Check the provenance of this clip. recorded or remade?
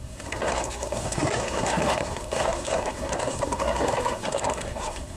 remade